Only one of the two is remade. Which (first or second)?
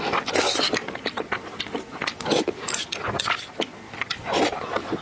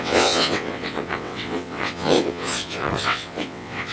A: second